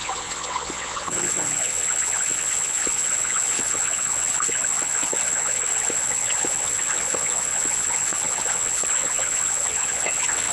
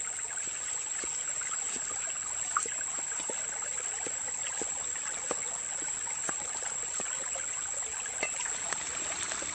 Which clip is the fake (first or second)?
first